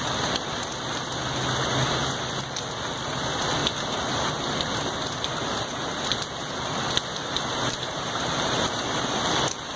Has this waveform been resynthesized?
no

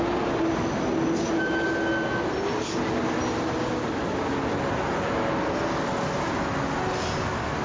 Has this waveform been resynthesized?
no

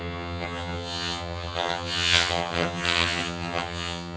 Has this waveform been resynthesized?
yes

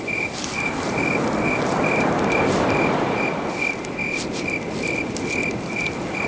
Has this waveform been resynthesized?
no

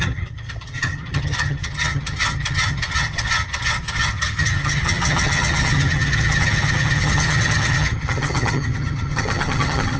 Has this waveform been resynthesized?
yes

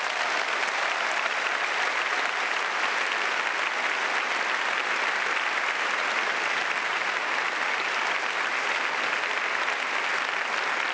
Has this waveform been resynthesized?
no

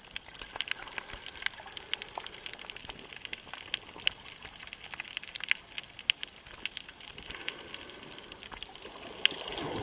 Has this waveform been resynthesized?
no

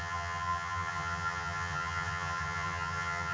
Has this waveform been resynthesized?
yes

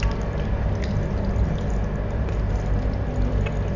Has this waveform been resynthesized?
no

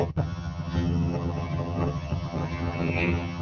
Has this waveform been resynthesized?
yes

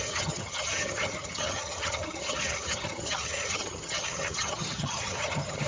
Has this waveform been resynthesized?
yes